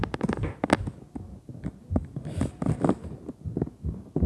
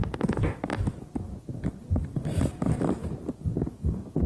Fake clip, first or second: second